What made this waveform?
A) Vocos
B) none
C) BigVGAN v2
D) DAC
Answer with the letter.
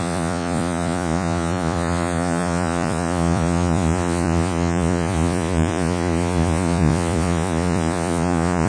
A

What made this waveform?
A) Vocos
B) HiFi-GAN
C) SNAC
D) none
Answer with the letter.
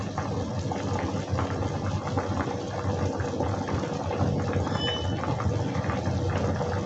D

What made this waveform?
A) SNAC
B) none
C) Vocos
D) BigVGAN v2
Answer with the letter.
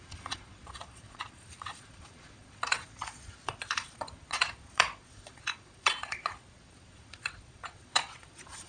C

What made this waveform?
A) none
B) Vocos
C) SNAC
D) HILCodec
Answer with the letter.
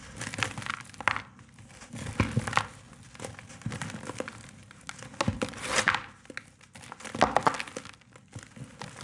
A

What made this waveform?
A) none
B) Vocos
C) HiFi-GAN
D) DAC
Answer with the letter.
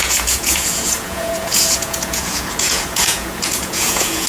B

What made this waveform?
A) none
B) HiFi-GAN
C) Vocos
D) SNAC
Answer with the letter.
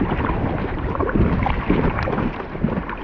A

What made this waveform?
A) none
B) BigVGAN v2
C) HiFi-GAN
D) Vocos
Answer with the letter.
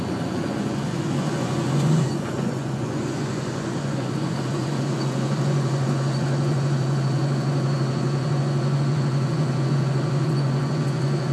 D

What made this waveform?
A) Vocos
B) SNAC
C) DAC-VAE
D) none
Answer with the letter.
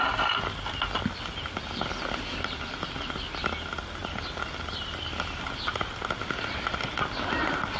D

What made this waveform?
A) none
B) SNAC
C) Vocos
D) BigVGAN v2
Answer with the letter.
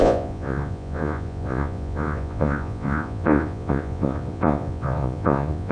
C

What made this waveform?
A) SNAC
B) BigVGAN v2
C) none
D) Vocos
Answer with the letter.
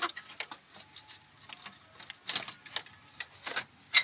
C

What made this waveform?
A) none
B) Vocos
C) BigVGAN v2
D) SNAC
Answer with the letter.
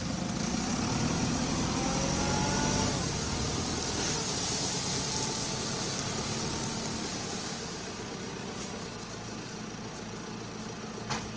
A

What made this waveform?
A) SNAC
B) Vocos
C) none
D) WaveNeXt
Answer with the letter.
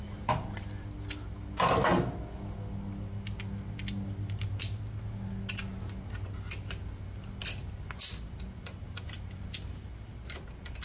C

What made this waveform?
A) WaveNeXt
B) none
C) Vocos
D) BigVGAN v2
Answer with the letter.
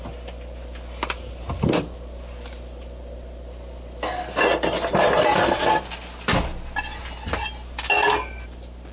B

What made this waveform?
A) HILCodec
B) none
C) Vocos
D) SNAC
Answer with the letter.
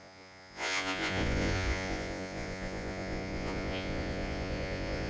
C